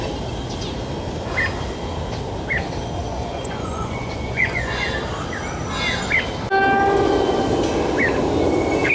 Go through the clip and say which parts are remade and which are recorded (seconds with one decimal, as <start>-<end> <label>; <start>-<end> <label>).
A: 0.0-3.1 recorded; 3.1-4.9 remade; 4.9-8.9 recorded